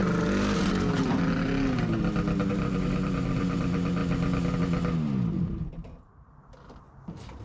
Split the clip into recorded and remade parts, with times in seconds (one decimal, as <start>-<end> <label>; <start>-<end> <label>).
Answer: 0.0-2.5 recorded; 2.5-4.0 remade; 4.0-5.3 recorded; 5.3-7.4 remade